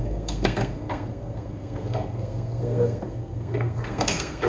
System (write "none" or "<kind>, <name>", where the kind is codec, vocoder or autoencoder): codec, SNAC